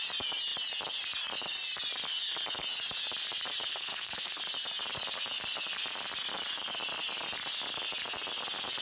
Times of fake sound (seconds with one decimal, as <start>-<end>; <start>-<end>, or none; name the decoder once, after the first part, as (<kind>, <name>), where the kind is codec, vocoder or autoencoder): 3.7-4.4 (codec, SNAC)